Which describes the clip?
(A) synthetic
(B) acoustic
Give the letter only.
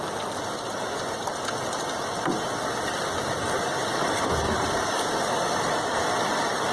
B